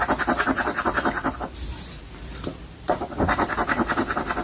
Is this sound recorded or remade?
recorded